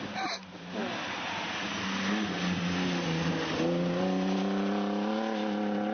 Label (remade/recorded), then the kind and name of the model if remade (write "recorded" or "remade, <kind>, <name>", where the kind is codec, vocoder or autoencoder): recorded